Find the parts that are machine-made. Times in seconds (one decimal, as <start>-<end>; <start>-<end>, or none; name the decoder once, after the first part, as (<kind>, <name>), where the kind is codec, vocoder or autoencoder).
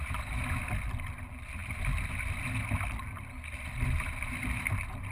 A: none